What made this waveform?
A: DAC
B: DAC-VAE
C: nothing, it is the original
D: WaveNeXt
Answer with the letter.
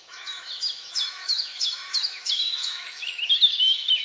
B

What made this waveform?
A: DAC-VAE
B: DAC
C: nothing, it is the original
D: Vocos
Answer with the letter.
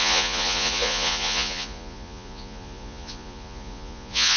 D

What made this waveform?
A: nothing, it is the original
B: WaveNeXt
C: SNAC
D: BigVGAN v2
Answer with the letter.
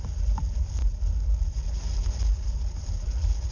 A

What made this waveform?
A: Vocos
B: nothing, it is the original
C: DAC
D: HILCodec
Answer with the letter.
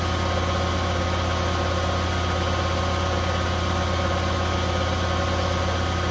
B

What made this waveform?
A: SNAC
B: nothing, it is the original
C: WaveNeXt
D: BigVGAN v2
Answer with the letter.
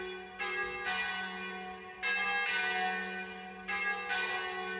B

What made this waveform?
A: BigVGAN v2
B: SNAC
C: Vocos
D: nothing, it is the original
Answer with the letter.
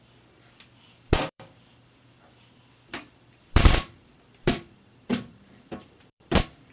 A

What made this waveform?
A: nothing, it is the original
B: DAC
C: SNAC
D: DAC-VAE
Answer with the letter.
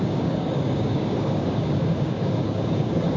B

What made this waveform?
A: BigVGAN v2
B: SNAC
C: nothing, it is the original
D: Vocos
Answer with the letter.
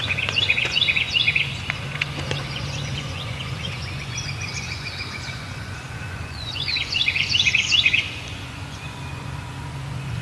D